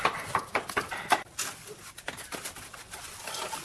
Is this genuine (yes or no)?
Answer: yes